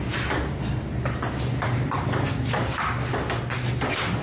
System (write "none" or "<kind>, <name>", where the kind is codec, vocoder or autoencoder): none